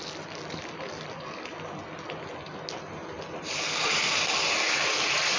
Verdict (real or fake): real